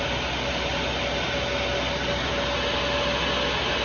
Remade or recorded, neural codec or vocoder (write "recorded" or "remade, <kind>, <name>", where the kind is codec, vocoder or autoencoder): recorded